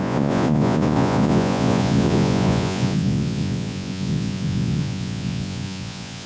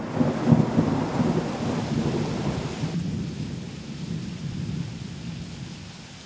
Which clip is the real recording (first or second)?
second